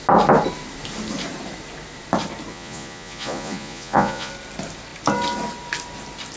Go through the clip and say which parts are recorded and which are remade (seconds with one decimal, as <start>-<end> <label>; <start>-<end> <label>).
0.0-2.5 recorded; 2.5-4.3 remade; 4.3-6.4 recorded